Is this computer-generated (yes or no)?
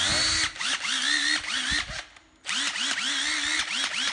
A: no